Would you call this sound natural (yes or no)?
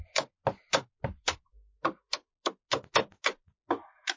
yes